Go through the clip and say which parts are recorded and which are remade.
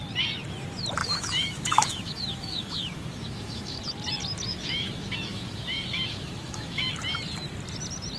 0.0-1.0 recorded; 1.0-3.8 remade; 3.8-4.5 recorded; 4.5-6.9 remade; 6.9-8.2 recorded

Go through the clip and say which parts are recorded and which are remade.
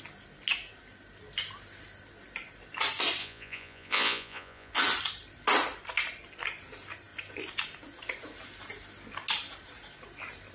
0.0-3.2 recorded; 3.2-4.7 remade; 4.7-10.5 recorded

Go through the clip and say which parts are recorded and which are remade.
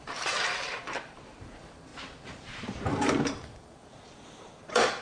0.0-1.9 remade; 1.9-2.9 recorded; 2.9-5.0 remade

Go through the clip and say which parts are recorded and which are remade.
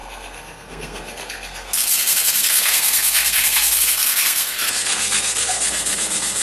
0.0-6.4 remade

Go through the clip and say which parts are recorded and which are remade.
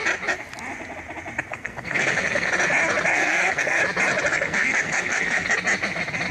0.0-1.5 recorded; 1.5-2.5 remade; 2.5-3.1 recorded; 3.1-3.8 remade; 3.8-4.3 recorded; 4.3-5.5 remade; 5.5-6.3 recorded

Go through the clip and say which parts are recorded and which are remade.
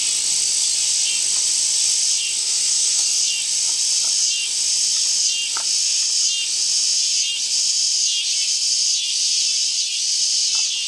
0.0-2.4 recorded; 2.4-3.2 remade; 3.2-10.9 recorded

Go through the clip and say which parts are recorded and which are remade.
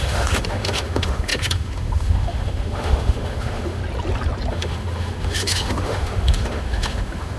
0.0-3.8 remade; 3.8-4.5 recorded; 4.5-7.4 remade